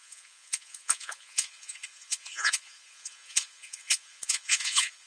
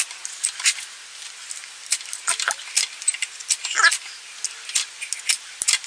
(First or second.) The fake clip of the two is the first